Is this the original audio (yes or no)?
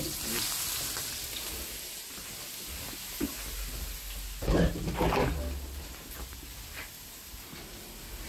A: yes